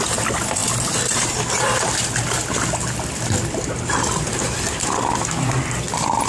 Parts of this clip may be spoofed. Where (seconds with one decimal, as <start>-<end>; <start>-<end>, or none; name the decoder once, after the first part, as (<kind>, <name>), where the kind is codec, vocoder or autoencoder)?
0.6-4.4 (vocoder, BigVGAN v2)